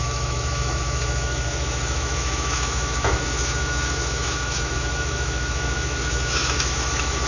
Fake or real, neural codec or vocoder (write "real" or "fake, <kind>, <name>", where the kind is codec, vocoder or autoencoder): fake, autoencoder, DAC-VAE